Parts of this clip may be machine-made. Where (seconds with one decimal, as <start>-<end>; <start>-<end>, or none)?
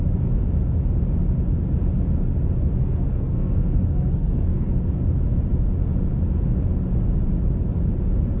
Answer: 2.8-4.8